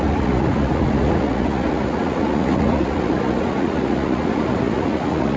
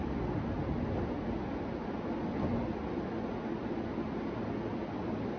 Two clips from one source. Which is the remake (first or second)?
first